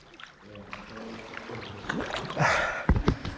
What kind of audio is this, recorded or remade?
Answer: recorded